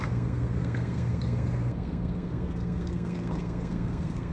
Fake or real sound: fake